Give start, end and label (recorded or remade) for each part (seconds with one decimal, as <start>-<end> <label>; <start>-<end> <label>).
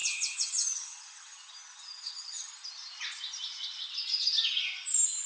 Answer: 0.0-2.5 remade; 2.5-5.3 recorded